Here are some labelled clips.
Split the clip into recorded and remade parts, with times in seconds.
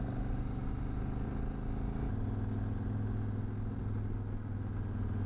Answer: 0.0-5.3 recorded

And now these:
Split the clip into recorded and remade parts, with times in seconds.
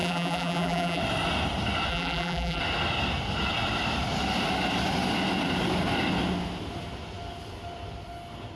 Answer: 0.0-1.0 remade; 1.0-1.9 recorded; 1.9-2.6 remade; 2.6-8.6 recorded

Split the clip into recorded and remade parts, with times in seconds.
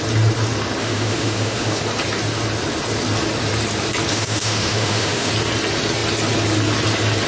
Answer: 0.0-0.8 recorded; 0.8-1.8 remade; 1.8-4.1 recorded; 4.1-5.3 remade; 5.3-7.3 recorded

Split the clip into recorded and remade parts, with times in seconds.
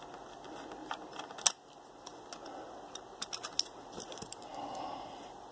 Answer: 0.0-5.5 recorded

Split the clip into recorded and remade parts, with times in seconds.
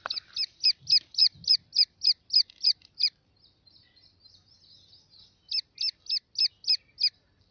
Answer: 0.0-1.2 recorded; 1.2-4.7 remade; 4.7-7.5 recorded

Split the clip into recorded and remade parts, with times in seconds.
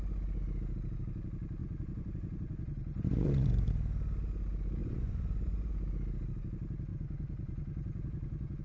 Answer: 0.0-1.6 recorded; 1.6-3.7 remade; 3.7-4.8 recorded; 4.8-5.7 remade; 5.7-6.9 recorded; 6.9-8.6 remade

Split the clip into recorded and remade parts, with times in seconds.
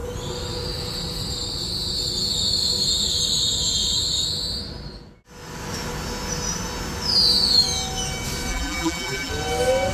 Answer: 0.0-8.5 recorded; 8.5-9.3 remade; 9.3-9.9 recorded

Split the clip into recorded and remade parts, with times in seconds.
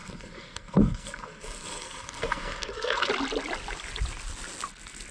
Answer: 0.0-3.1 remade; 3.1-5.1 recorded